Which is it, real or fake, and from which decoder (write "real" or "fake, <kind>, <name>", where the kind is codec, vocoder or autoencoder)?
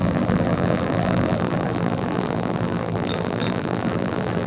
fake, vocoder, BigVGAN v2